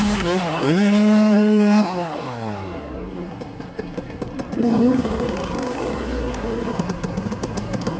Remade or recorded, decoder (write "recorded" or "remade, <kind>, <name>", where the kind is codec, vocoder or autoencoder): remade, codec, SNAC